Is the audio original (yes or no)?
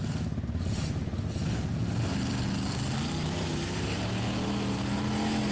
yes